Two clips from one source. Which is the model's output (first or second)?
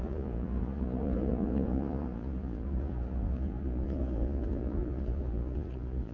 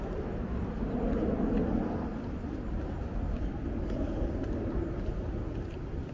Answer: first